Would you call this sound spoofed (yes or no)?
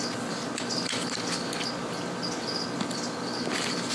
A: no